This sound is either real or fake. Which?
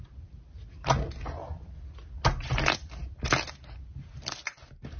real